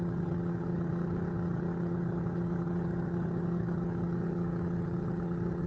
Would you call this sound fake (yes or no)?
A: yes